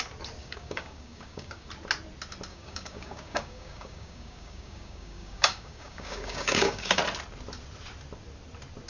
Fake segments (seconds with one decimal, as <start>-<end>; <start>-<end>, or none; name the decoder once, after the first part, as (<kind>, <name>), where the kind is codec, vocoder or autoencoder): 0.4-1.7 (codec, DAC); 2.5-7.0